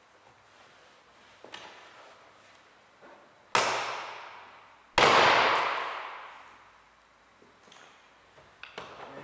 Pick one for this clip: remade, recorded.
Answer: recorded